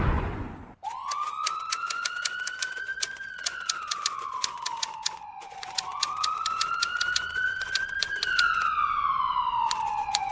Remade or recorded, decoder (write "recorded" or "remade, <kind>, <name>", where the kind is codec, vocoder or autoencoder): remade, vocoder, Vocos